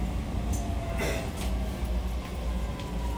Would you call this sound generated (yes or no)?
no